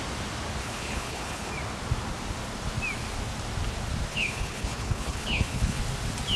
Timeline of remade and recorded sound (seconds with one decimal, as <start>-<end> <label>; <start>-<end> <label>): 0.0-0.6 recorded; 0.6-1.5 remade; 1.5-4.1 recorded; 4.1-5.8 remade; 5.8-6.4 recorded